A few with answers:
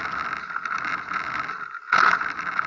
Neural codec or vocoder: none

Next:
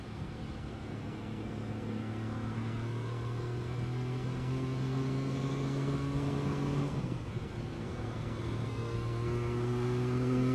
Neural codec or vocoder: codec, SNAC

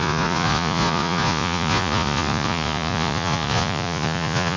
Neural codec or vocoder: vocoder, Vocos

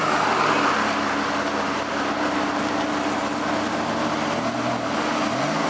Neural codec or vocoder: none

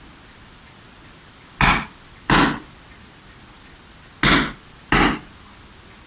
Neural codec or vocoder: none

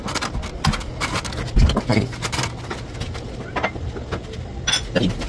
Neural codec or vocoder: none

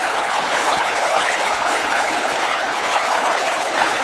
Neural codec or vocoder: codec, HILCodec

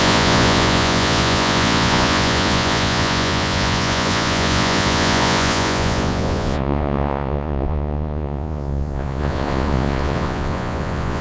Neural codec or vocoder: vocoder, Vocos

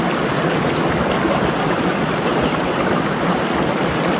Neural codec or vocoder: none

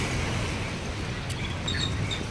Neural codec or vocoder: none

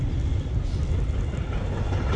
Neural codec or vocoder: none